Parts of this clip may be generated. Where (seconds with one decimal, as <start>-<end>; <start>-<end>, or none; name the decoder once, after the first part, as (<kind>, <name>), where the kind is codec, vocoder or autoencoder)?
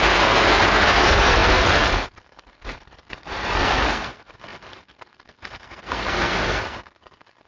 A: 0.0-7.5 (codec, SNAC)